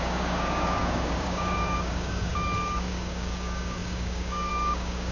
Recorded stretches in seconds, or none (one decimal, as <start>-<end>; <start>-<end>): none